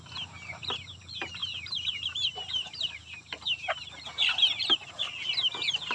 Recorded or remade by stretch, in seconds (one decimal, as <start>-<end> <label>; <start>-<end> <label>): 0.0-1.4 recorded; 1.4-4.9 remade; 4.9-5.9 recorded